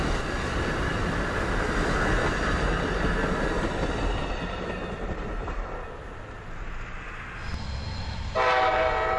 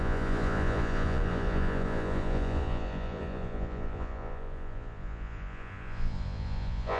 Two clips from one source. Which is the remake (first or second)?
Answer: second